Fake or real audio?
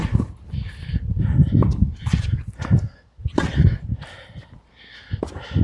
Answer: real